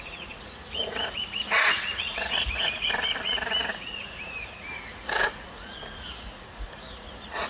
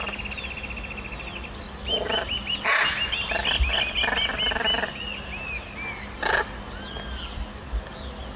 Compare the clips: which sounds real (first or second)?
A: second